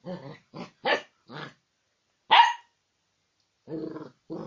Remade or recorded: recorded